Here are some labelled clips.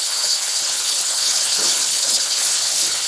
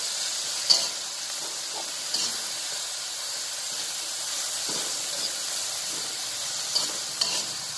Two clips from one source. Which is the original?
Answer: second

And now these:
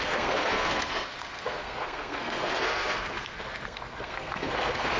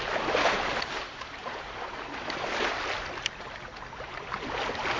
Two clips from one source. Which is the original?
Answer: second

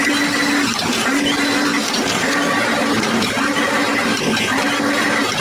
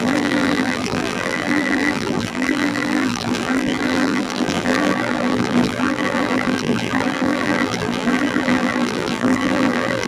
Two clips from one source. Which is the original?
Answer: first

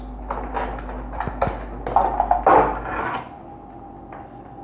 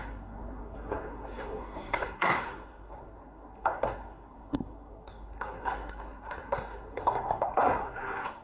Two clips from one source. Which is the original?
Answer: first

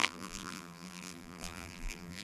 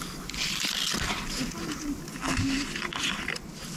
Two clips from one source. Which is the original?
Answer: second